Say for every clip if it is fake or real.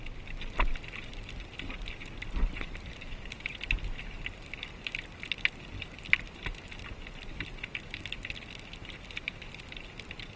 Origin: real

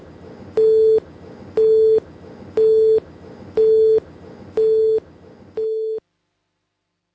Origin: real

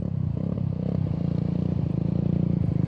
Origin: real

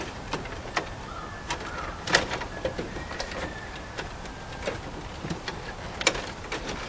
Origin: real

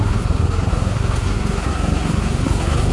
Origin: fake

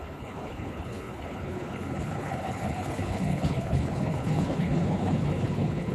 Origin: fake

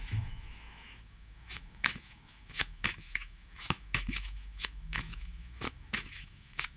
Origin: fake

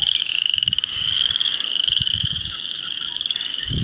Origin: fake